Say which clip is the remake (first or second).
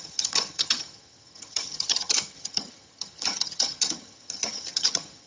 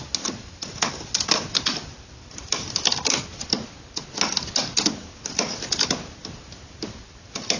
first